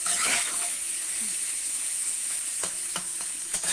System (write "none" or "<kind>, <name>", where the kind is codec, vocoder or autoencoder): autoencoder, DAC-VAE